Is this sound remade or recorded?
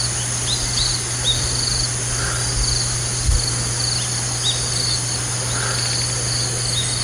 recorded